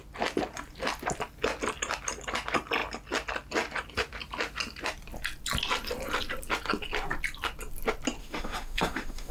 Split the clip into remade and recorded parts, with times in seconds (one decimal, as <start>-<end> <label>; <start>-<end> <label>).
0.0-8.2 recorded; 8.2-9.3 remade